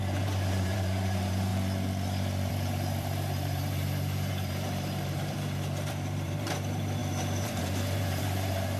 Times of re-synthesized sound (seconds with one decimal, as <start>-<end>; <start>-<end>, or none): 0.0-1.5; 2.5-8.8